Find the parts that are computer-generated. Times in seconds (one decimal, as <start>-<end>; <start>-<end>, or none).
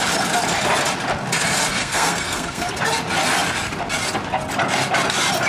1.8-2.8